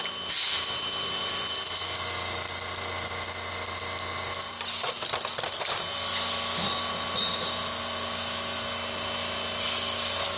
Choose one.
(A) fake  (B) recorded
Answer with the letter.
B